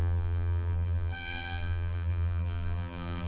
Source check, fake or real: fake